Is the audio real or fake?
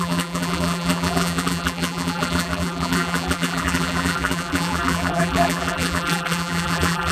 fake